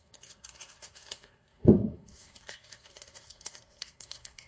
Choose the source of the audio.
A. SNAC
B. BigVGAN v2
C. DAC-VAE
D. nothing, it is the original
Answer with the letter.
A